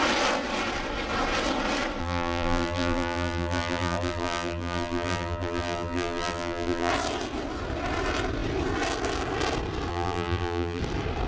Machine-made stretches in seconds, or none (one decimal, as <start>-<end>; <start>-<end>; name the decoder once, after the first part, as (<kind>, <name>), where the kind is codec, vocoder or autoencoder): 2.0-6.9 (vocoder, BigVGAN v2); 9.9-10.8